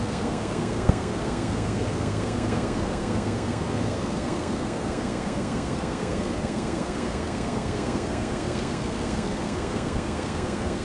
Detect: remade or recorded remade